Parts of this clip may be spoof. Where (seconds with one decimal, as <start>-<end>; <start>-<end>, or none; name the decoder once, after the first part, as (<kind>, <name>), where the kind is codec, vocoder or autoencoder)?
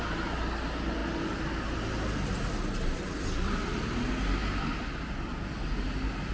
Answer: none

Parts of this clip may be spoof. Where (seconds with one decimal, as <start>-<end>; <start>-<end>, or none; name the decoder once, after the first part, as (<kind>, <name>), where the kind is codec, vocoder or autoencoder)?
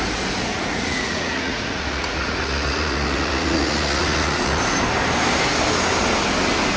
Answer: 0.5-4.6 (vocoder, Vocos)